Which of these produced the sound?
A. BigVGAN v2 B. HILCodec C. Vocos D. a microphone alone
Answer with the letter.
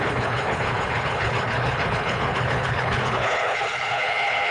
B